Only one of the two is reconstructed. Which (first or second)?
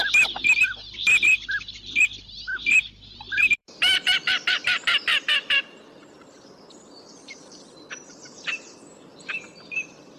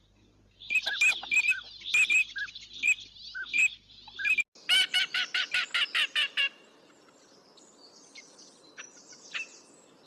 first